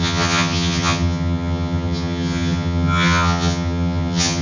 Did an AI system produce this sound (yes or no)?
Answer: yes